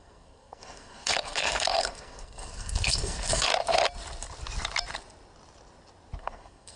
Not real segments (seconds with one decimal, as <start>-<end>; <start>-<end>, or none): 0.0-3.5; 6.2-6.8